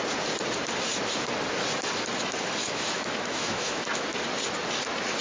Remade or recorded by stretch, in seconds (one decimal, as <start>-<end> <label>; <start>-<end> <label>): 0.0-2.6 recorded; 2.6-3.8 remade; 3.8-5.2 recorded

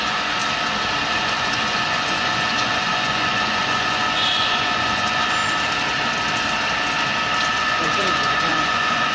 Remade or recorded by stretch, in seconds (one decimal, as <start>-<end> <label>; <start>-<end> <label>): 0.0-0.4 remade; 0.4-1.1 recorded; 1.1-5.4 remade; 5.4-7.5 recorded; 7.5-9.1 remade

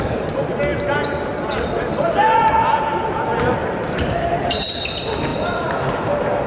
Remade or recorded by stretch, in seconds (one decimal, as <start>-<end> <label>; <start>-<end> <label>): 0.0-3.6 recorded; 3.6-4.3 remade; 4.3-6.5 recorded

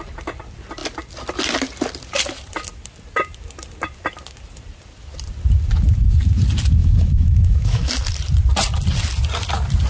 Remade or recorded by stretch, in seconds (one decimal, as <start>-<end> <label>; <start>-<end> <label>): 0.0-6.8 recorded; 6.8-7.9 remade; 7.9-9.9 recorded

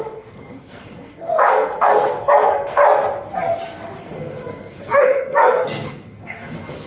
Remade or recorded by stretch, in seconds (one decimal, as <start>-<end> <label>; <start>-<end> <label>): 0.0-2.8 remade; 2.8-4.0 recorded; 4.0-6.9 remade

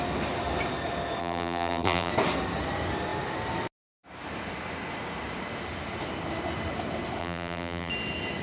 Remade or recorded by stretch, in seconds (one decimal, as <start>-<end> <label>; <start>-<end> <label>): 0.0-1.2 recorded; 1.2-2.1 remade; 2.1-7.2 recorded; 7.2-7.9 remade; 7.9-8.4 recorded

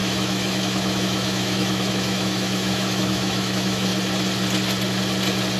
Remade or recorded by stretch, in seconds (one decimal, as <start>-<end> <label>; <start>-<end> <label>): 0.0-3.9 remade; 3.9-5.6 recorded